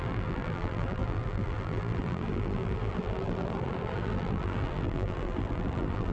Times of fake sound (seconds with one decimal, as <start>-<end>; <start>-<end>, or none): 0.0-6.1